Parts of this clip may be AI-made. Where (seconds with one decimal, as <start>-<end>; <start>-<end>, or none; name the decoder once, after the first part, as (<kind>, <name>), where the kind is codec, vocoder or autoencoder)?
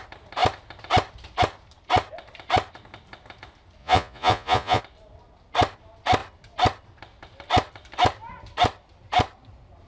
3.8-4.8 (vocoder, Vocos)